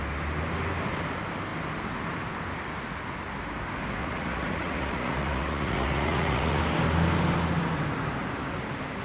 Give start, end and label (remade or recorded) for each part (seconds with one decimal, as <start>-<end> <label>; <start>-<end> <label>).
0.0-4.0 recorded; 4.0-6.6 remade; 6.6-9.0 recorded